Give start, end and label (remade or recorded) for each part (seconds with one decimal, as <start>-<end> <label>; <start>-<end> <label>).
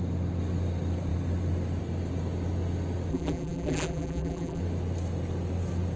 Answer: 0.0-3.1 recorded; 3.1-4.6 remade; 4.6-6.0 recorded